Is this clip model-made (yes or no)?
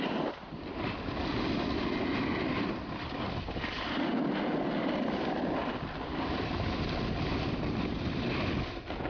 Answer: no